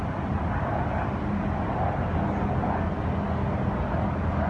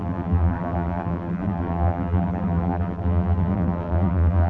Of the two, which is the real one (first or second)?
first